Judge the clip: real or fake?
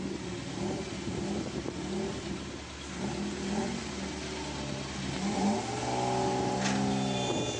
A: real